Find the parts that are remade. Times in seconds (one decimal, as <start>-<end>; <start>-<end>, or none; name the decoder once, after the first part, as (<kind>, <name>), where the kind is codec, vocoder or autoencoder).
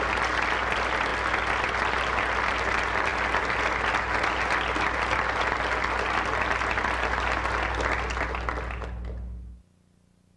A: none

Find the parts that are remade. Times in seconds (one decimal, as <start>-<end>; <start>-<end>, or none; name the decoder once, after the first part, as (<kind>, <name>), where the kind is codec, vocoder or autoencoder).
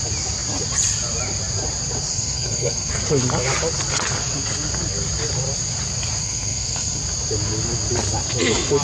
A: 2.1-2.9 (codec, SNAC); 6.2-7.0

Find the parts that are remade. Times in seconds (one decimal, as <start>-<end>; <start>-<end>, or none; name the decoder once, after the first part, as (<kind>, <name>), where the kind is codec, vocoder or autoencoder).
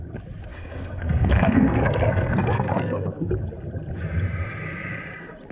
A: 0.5-3.3 (codec, SNAC)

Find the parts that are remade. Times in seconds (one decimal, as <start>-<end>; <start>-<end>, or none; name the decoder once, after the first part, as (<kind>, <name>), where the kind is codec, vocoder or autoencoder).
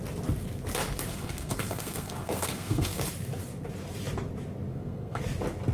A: 1.1-3.0 (codec, SNAC); 4.7-5.2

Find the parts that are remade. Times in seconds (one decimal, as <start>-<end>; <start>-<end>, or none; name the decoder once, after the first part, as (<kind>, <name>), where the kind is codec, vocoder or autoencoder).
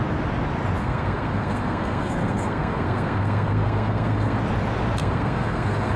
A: 0.8-4.4 (codec, SNAC); 5.0-6.0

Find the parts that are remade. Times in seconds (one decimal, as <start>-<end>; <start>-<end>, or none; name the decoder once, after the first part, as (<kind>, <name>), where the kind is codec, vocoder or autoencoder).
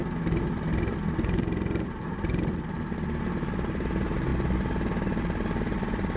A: none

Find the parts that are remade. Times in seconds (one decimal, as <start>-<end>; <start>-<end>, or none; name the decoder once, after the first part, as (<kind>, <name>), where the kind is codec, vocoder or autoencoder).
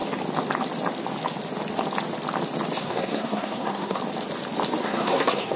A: 2.8-4.0 (codec, SNAC); 4.8-5.6